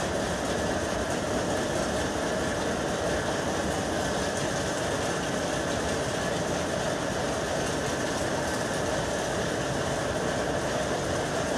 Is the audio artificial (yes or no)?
no